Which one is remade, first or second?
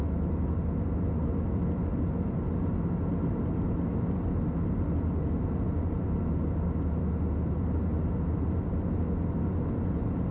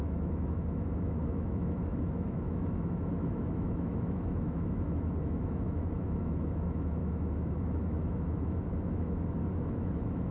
second